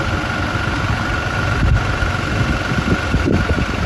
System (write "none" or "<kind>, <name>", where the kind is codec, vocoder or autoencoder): none